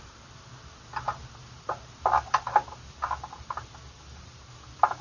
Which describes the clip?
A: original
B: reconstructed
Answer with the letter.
A